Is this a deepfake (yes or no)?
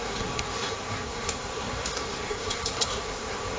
yes